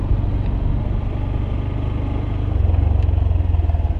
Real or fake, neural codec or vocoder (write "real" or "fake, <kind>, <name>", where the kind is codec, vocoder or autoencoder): real